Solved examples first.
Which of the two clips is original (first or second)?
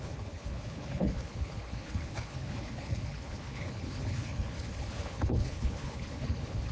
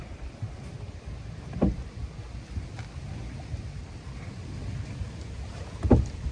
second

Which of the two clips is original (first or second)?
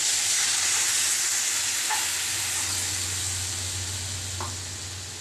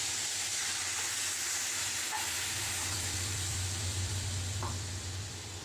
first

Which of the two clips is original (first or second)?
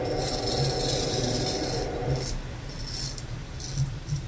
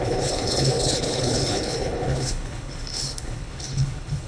first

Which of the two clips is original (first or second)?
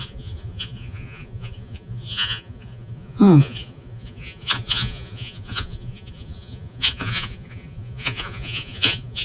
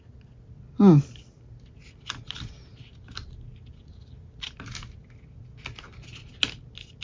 second